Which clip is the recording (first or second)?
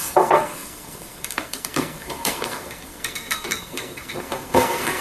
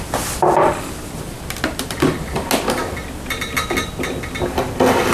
second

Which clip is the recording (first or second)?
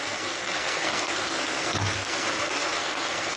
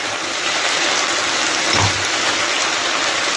second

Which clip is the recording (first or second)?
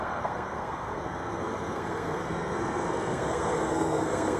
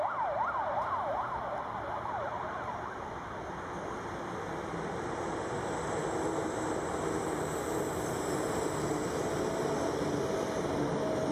second